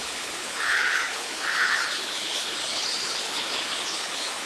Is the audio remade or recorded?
remade